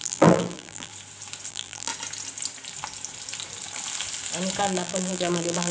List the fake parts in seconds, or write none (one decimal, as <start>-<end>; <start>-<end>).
0.0-0.9; 1.5-1.9; 4.6-5.7